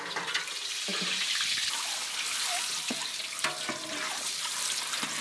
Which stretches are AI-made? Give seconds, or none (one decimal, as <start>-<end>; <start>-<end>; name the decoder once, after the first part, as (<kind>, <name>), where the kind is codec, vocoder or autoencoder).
none